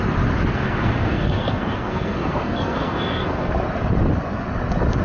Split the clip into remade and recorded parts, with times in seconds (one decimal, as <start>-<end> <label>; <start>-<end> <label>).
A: 0.0-0.5 recorded; 0.5-3.5 remade; 3.5-5.0 recorded

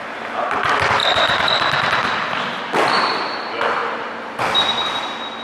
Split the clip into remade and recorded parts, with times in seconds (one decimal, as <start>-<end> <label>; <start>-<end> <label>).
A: 0.0-5.4 recorded

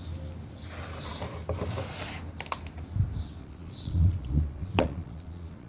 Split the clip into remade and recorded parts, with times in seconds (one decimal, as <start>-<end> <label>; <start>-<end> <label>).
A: 0.0-3.4 recorded; 3.4-5.7 remade

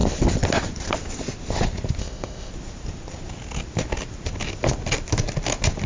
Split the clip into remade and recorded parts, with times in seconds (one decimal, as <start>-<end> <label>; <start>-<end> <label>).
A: 0.0-2.0 recorded; 2.0-2.5 remade; 2.5-5.9 recorded

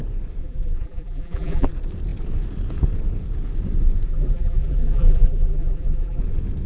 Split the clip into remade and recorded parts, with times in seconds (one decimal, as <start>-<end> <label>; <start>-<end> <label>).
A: 0.0-0.4 recorded; 0.4-1.7 remade; 1.7-4.1 recorded; 4.1-6.2 remade; 6.2-6.7 recorded

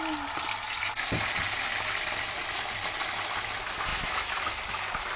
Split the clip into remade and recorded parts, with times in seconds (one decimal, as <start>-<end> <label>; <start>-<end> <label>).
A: 0.0-3.9 recorded; 3.9-4.5 remade; 4.5-5.2 recorded